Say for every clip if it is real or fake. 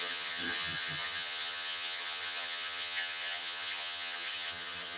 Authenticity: fake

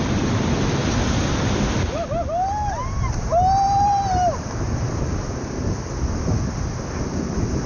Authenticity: real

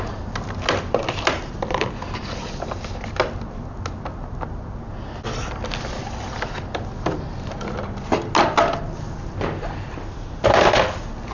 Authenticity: real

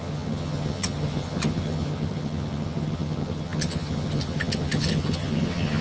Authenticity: fake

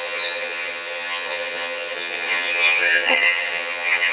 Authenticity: fake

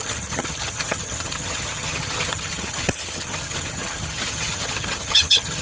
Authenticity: fake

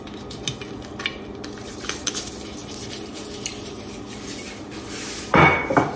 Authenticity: real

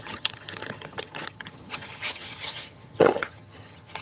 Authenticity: fake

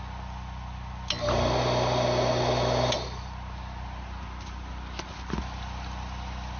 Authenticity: real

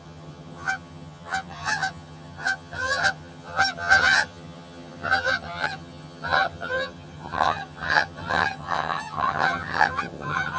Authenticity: fake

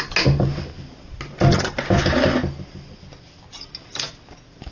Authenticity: real